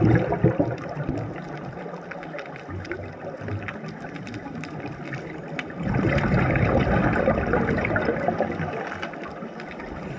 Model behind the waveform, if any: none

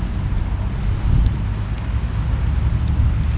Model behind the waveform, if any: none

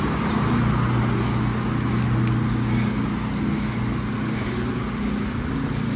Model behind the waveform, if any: none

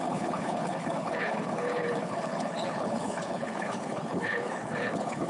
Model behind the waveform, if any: codec, HILCodec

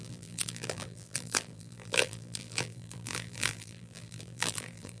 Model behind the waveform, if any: vocoder, BigVGAN v2